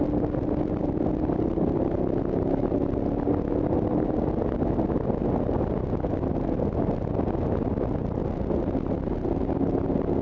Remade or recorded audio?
recorded